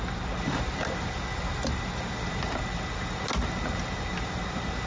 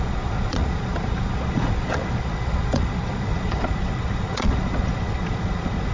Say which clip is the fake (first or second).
second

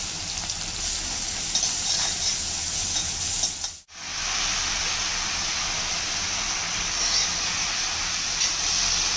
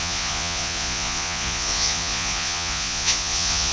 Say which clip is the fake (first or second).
second